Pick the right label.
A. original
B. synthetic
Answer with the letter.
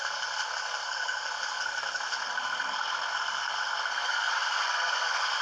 B